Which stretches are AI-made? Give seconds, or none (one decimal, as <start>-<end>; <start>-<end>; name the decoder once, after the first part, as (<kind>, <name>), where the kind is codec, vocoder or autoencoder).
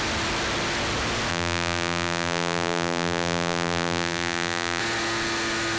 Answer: 1.3-4.8 (vocoder, BigVGAN v2)